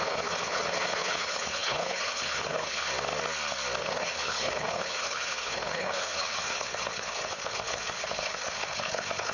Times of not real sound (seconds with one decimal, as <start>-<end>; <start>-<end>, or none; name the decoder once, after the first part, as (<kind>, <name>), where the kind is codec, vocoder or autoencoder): 0.0-2.9 (codec, HILCodec); 3.8-9.3